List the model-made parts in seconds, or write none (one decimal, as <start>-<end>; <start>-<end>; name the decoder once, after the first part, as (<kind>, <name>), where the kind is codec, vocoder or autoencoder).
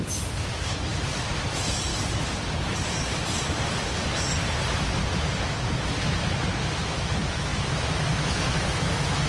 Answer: 0.0-0.9 (autoencoder, DAC-VAE); 1.5-1.9; 6.6-9.3